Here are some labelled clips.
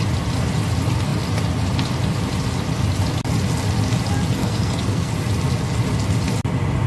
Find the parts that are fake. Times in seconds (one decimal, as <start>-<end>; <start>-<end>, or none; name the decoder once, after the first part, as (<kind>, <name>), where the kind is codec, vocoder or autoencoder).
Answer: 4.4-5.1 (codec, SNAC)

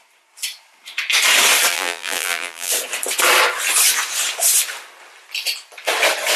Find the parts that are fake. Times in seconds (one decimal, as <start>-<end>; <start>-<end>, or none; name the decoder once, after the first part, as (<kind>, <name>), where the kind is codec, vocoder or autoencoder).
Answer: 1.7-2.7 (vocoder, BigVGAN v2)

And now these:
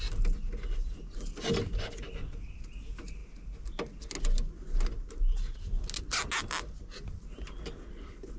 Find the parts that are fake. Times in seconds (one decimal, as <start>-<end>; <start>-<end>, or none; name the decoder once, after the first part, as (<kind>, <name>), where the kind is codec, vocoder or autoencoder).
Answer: none

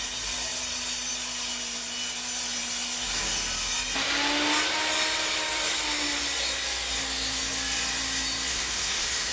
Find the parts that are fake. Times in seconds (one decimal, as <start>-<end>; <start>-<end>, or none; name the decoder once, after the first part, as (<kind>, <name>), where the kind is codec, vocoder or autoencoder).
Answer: 8.5-9.3 (autoencoder, DAC-VAE)

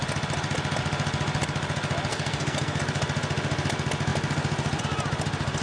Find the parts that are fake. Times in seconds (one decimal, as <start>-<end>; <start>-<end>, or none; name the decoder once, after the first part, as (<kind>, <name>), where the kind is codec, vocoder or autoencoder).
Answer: 2.1-2.8 (codec, SNAC)

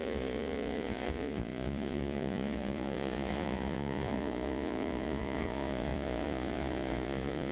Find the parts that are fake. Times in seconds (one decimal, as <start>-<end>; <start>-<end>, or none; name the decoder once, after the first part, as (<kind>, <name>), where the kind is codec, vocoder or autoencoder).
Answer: 0.0-7.5 (vocoder, Vocos)

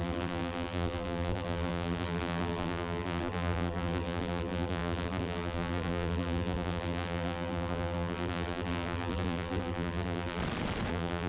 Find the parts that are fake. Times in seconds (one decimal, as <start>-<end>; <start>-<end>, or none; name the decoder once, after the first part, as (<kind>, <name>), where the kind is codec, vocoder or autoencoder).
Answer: 0.0-10.4 (vocoder, BigVGAN v2); 10.9-11.3